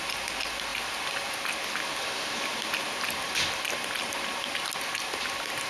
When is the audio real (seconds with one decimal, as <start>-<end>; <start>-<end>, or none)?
0.0-5.7